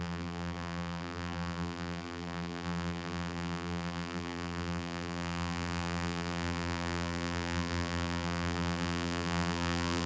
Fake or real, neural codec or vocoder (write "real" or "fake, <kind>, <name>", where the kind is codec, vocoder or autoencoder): fake, vocoder, BigVGAN v2